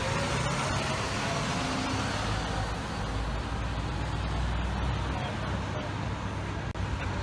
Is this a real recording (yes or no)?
yes